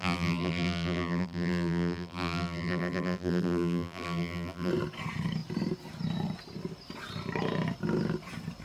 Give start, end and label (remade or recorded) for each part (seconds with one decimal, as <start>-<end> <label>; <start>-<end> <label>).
0.0-4.7 remade; 4.7-8.6 recorded